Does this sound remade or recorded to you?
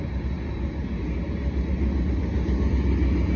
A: recorded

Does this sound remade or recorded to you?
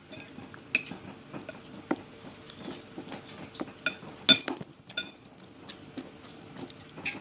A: recorded